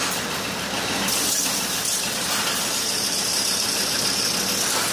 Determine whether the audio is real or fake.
fake